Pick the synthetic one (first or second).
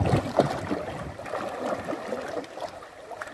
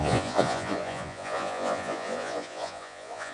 second